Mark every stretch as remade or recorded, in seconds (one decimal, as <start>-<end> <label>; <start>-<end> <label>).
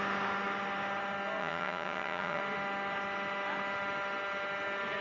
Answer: 0.0-1.4 recorded; 1.4-2.4 remade; 2.4-5.0 recorded